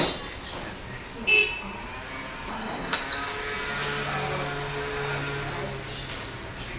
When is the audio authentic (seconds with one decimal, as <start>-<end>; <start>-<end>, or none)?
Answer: 0.0-2.5; 3.0-6.8